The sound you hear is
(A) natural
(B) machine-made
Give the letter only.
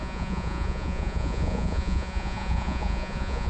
B